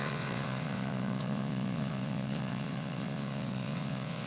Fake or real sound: fake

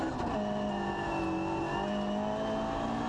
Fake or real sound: real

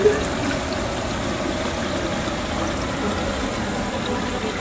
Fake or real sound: real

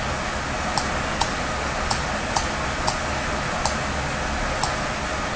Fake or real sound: real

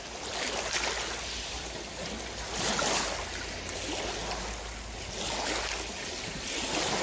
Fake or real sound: real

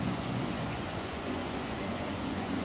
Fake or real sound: fake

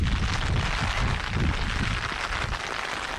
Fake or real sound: real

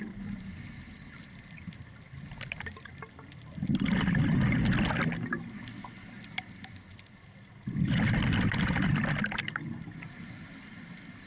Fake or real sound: real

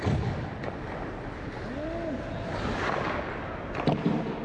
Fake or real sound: real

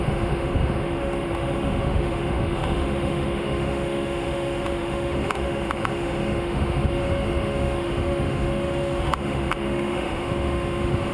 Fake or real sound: fake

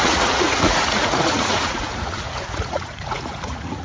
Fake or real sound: fake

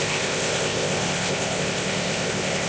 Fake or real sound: fake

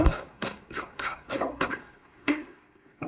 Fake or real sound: fake